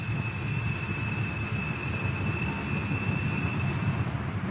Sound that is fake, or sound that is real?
real